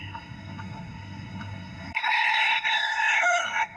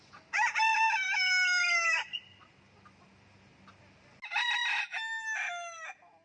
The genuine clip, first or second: second